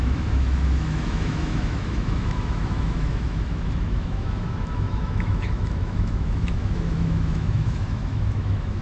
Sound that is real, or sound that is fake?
fake